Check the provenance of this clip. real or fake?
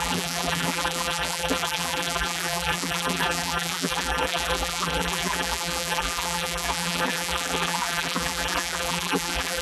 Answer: fake